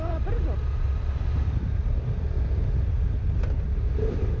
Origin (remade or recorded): recorded